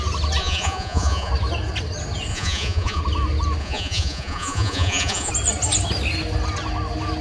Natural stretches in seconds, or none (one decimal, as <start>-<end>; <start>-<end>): 0.0-0.4; 1.3-2.3; 3.0-3.6; 5.3-7.2